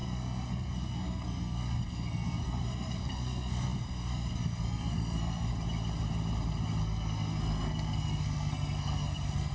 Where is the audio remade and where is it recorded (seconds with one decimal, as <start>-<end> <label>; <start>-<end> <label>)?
0.0-5.5 remade; 5.5-6.8 recorded; 6.8-9.5 remade